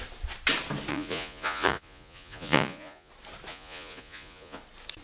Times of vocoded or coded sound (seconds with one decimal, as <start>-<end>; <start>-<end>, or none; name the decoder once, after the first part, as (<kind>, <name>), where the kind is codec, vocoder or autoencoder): 0.9-3.1 (vocoder, Vocos); 3.5-4.6